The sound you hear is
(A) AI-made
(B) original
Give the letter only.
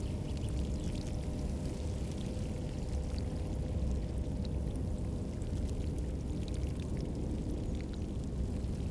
B